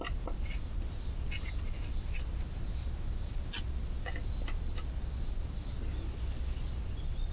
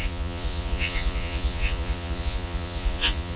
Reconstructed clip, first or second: second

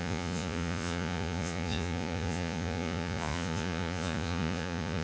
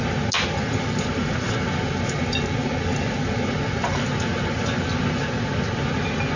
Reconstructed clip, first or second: first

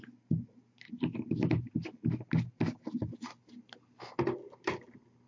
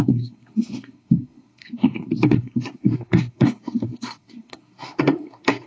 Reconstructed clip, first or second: second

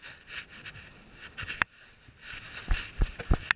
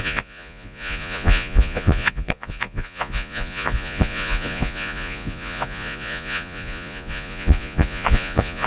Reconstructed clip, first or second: second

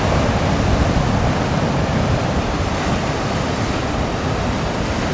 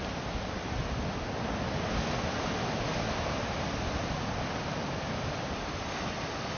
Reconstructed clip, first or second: first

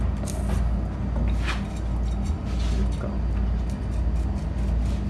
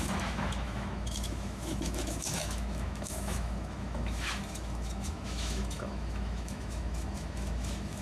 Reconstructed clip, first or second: second